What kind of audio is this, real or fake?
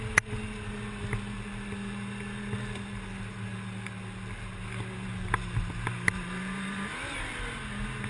real